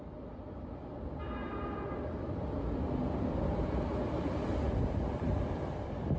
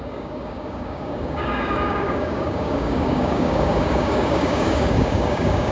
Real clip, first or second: first